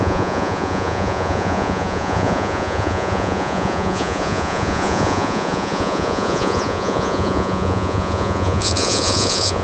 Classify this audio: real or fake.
fake